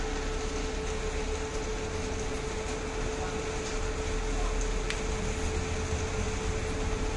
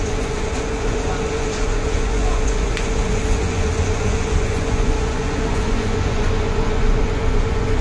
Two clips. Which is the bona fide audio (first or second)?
first